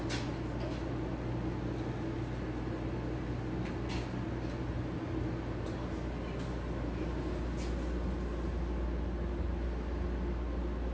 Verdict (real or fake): real